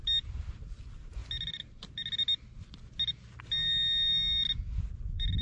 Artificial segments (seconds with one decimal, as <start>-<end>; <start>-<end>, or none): none

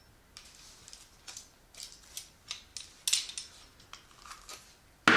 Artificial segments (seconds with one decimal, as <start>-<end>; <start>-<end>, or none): none

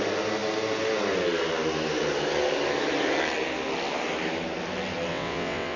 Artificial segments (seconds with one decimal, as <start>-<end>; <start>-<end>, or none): 5.1-5.8